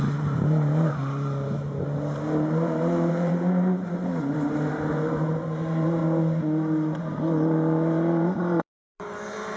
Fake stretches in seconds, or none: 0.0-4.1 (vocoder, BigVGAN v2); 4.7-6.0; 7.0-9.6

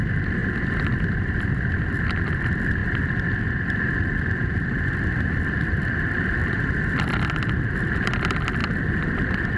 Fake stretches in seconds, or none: 0.4-1.8 (vocoder, BigVGAN v2)

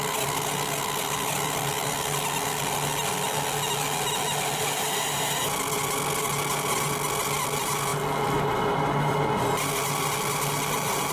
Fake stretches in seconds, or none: none

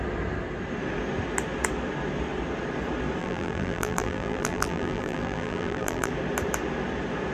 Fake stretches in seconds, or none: 3.2-6.1 (vocoder, BigVGAN v2)

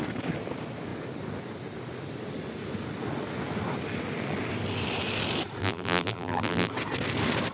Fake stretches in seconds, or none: 5.6-6.7 (vocoder, BigVGAN v2)